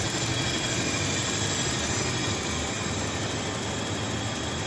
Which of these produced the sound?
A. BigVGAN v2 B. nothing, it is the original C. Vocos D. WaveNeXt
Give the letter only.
B